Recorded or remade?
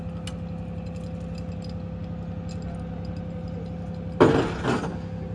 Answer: recorded